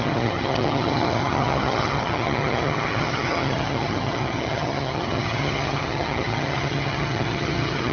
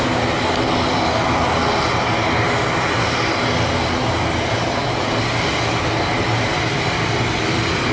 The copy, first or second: first